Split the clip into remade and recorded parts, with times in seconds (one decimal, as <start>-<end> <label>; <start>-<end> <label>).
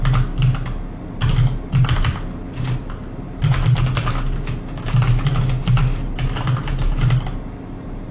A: 0.0-8.1 recorded